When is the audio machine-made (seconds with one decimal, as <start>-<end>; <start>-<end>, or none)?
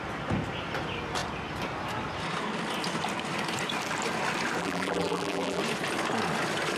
4.6-5.6